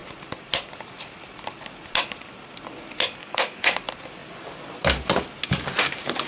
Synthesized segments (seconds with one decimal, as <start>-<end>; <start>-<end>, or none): 3.2-3.8